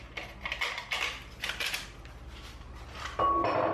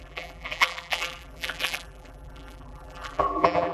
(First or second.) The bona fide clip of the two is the first